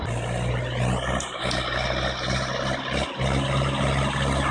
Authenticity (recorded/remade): recorded